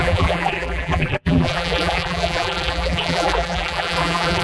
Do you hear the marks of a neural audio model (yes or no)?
yes